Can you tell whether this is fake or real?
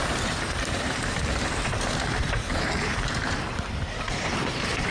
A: fake